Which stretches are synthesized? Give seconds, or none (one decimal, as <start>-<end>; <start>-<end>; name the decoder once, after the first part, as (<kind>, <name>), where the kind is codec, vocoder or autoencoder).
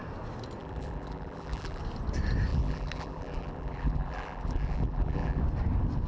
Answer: 0.6-1.8 (vocoder, BigVGAN v2); 2.5-5.4